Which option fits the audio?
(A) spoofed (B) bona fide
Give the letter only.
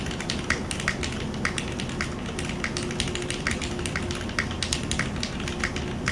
B